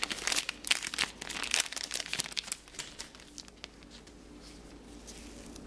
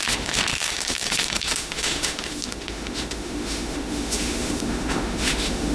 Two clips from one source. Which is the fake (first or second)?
second